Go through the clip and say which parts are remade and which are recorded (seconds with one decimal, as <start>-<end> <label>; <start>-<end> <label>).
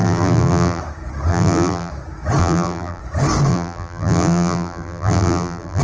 0.0-0.8 remade; 0.8-1.3 recorded; 1.3-1.9 remade; 1.9-2.4 recorded; 2.4-3.0 remade; 3.0-3.5 recorded; 3.5-5.8 remade